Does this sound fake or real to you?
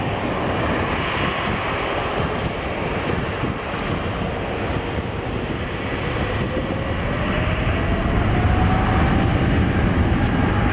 real